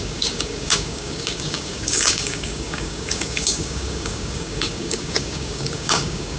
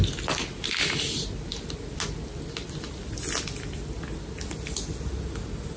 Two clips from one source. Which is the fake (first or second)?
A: first